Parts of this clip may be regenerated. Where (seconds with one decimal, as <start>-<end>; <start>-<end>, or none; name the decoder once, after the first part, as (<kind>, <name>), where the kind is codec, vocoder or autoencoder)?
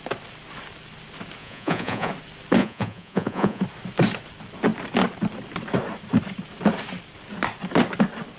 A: 1.4-2.1 (vocoder, Vocos); 2.6-3.6